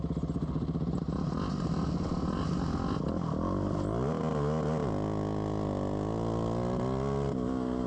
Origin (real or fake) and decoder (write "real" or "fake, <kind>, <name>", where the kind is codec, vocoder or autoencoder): real